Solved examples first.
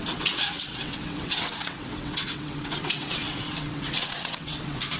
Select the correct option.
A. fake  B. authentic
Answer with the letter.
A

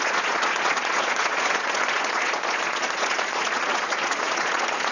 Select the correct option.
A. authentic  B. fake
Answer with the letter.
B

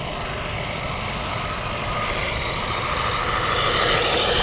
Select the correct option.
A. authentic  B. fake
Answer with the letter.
A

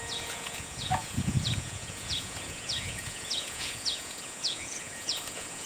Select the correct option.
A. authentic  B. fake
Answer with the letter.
B